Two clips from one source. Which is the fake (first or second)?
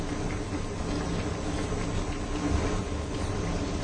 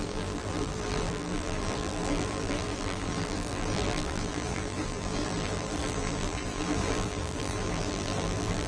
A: second